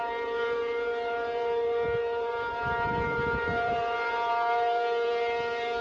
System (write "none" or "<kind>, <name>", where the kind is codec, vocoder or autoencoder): vocoder, BigVGAN v2